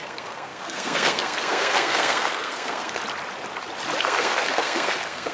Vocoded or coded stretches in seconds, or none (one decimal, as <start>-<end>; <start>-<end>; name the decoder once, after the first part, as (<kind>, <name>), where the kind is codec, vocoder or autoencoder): 0.0-3.0 (codec, SNAC); 4.0-5.3